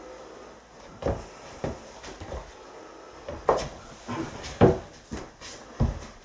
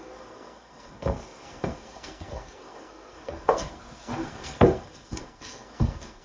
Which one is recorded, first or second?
first